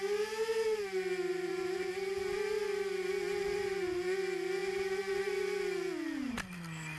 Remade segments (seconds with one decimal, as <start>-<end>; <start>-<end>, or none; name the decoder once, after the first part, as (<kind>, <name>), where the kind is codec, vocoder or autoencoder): 1.3-2.1 (vocoder, BigVGAN v2); 4.6-5.1